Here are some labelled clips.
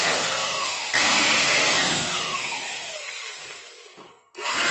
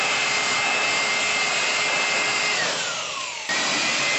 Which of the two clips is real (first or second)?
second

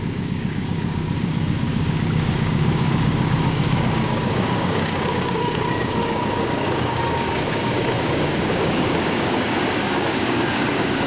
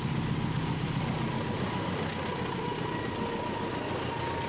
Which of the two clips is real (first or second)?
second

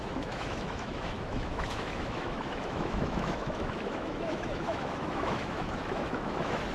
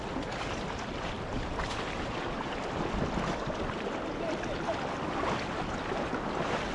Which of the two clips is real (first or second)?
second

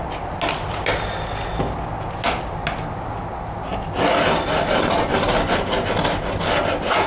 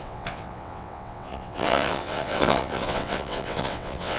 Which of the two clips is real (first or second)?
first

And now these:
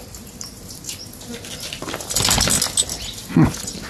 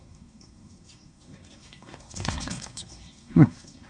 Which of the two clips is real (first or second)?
first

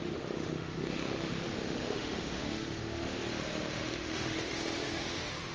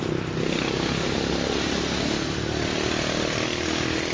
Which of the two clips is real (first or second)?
second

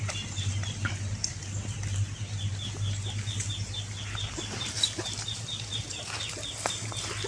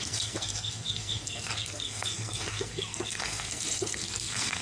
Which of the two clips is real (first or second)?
first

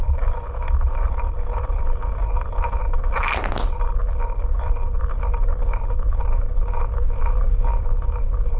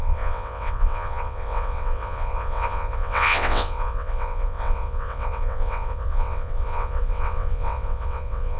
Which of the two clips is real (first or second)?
first